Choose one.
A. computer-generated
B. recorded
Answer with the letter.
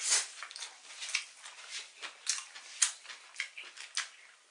B